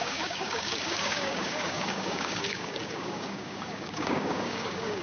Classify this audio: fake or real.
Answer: fake